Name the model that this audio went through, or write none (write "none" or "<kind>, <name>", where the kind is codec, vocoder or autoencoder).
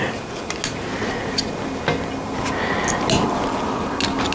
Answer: none